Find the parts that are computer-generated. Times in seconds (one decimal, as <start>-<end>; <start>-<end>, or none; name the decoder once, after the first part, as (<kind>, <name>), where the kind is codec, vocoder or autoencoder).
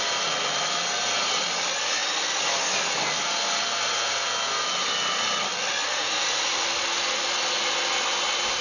none